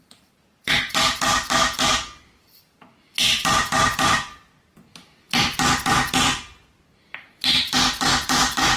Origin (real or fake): fake